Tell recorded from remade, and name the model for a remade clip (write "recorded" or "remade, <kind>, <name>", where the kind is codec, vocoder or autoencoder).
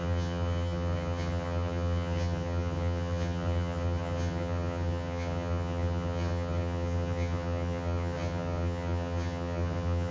remade, vocoder, HiFi-GAN